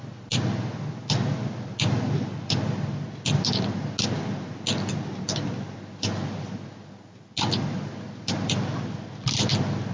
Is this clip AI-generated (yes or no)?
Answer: no